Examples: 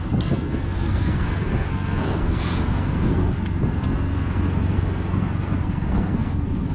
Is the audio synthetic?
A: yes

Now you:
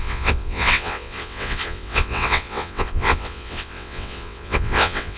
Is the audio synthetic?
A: yes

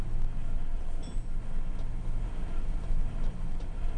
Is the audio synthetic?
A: no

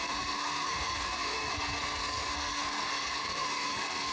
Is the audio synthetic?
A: yes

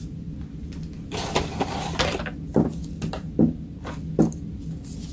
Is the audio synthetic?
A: no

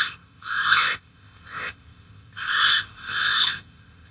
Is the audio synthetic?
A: yes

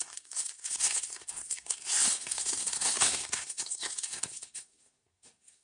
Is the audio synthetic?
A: yes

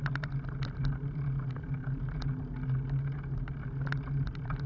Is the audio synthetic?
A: no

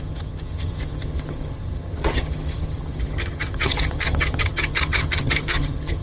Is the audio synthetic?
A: yes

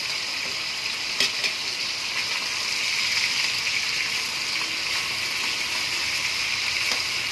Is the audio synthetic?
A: no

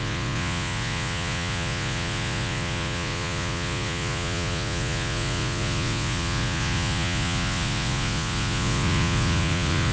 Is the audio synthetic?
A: yes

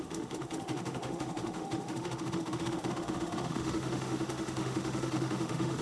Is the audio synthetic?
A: yes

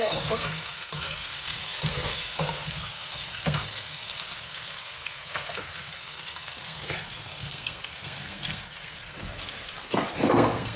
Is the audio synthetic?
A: yes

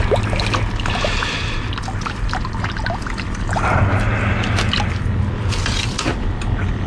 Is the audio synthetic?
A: no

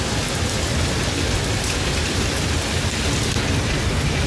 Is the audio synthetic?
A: no